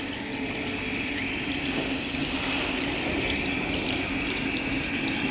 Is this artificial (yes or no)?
no